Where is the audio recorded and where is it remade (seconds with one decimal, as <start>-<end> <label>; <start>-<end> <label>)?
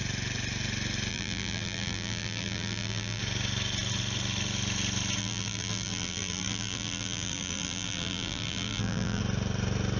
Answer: 0.0-1.1 recorded; 1.1-3.2 remade; 3.2-5.2 recorded; 5.2-9.2 remade; 9.2-10.0 recorded